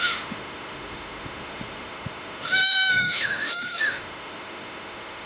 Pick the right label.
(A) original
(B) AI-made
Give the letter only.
B